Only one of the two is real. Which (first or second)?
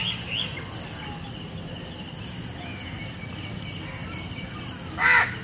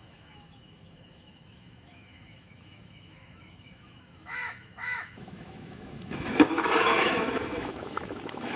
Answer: first